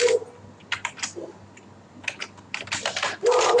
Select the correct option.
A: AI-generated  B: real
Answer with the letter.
B